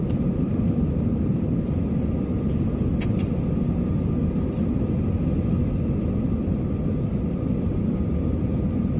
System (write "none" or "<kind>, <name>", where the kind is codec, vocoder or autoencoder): none